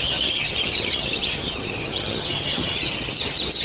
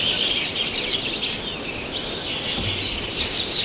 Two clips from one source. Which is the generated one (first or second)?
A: first